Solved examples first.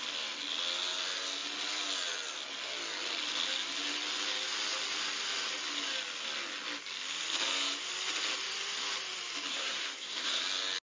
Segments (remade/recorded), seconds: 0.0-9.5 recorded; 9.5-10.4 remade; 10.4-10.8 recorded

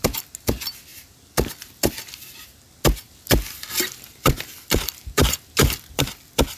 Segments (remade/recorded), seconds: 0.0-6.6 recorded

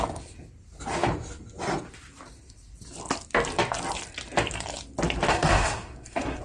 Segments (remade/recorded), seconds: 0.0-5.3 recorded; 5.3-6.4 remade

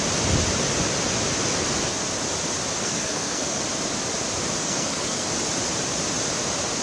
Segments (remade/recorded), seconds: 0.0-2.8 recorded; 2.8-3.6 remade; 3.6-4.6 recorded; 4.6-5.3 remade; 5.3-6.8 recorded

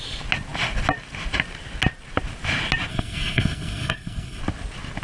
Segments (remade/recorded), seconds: 0.0-2.9 recorded; 2.9-4.4 remade; 4.4-5.0 recorded

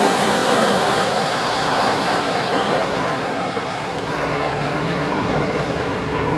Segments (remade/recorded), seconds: 0.0-6.4 remade

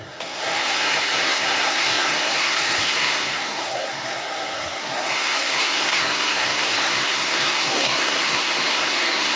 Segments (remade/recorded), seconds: 0.0-9.4 remade

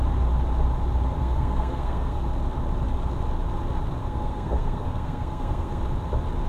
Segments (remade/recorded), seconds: 0.0-1.2 recorded; 1.2-2.2 remade; 2.2-4.0 recorded; 4.0-5.8 remade; 5.8-6.5 recorded